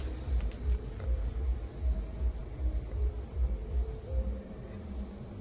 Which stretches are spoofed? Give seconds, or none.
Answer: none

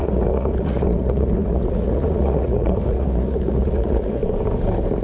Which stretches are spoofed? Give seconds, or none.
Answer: 0.0-4.2 (vocoder, Vocos)

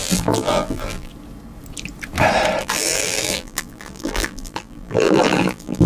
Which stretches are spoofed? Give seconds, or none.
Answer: 0.0-1.1 (vocoder, BigVGAN v2); 2.6-5.9

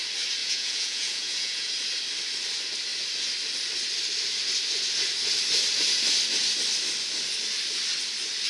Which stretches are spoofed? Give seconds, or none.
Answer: 0.4-1.7 (vocoder, Vocos)

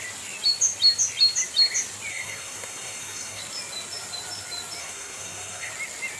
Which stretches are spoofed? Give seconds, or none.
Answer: 2.1-3.4 (codec, SNAC); 4.8-5.7

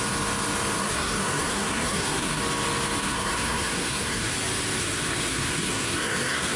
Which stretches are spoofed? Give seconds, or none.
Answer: 0.8-2.4 (codec, SNAC); 3.0-4.3; 4.8-6.6

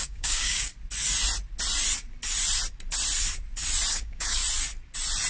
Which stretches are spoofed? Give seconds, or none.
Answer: 0.0-0.7 (codec, DAC); 3.9-4.4

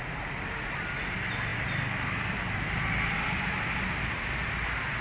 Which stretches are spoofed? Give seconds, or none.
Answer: none